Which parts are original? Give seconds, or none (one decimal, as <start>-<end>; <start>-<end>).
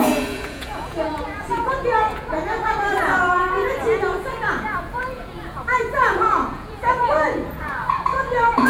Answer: none